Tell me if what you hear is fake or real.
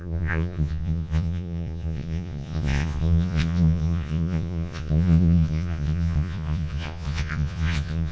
fake